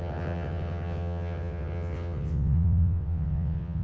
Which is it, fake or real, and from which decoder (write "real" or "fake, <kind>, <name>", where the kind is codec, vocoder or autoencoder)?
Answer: fake, vocoder, WaveNeXt